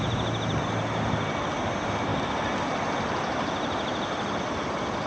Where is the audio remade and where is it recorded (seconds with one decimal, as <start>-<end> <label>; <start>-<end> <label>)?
0.0-5.1 recorded